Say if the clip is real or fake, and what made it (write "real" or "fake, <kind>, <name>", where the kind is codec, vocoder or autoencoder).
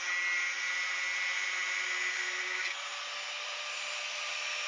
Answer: real